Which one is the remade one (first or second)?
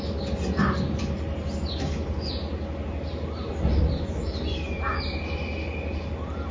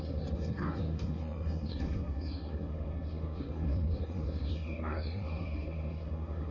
second